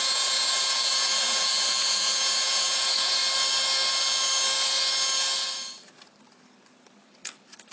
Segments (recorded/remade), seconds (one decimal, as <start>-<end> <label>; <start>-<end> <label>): 0.0-3.2 remade; 3.2-7.7 recorded